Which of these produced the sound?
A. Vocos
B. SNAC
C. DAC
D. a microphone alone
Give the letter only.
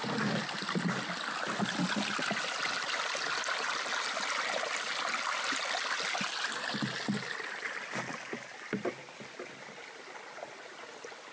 D